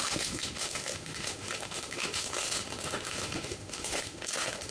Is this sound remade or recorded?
remade